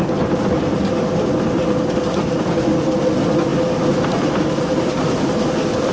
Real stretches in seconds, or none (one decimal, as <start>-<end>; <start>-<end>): 0.0-5.9